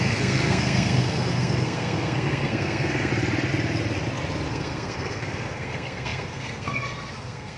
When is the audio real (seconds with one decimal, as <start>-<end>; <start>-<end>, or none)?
3.1-4.5